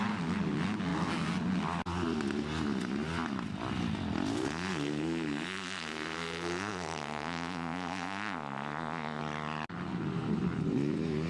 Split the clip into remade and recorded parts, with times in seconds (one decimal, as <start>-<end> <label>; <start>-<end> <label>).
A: 0.0-4.3 recorded; 4.3-9.2 remade; 9.2-11.3 recorded